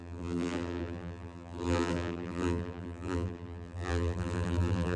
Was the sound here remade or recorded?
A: remade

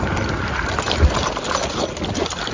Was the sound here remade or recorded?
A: recorded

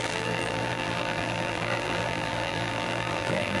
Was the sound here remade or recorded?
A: remade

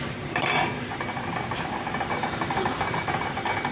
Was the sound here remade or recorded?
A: remade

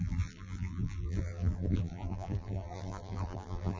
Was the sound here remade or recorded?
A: remade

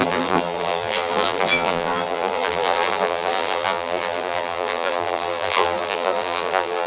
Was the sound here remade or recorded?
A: remade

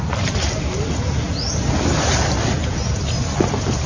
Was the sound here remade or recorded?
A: recorded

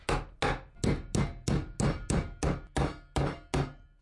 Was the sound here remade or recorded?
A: recorded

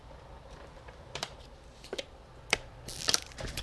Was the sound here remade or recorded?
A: remade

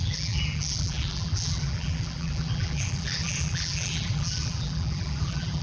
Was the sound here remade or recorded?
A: remade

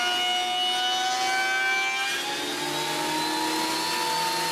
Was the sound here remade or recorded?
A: recorded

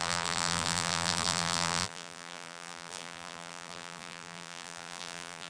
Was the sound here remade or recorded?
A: remade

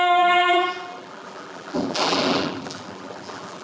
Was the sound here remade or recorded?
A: remade